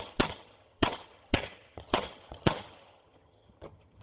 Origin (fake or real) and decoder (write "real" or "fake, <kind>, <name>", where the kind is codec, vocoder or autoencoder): fake, vocoder, HiFi-GAN